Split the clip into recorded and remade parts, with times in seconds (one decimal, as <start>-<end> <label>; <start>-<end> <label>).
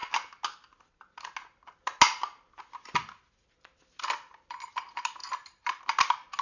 0.0-5.2 recorded; 5.2-5.8 remade; 5.8-6.4 recorded